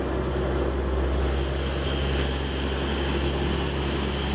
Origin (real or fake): real